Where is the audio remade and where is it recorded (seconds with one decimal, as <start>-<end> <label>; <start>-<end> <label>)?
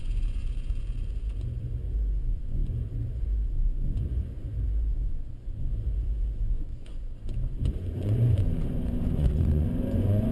0.0-10.3 remade